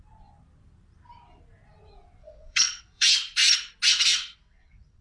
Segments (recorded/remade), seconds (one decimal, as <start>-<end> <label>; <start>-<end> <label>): 0.0-2.2 recorded; 2.2-3.1 remade; 3.1-3.9 recorded; 3.9-5.0 remade